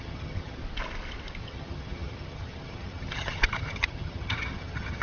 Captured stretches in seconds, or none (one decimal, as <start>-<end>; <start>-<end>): 0.6-1.4